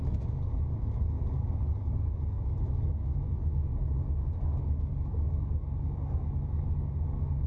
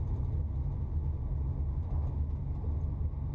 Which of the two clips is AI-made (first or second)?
first